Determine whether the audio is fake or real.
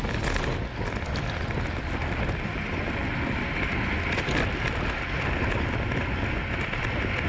real